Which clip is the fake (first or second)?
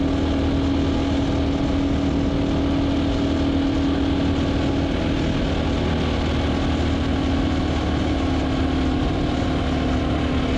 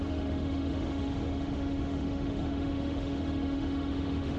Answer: second